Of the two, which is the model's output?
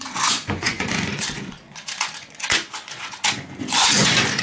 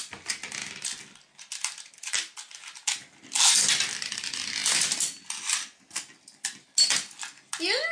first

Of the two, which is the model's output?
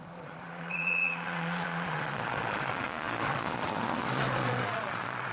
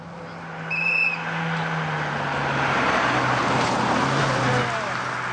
first